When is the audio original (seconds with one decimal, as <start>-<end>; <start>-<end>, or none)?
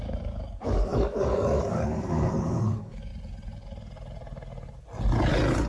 3.1-5.7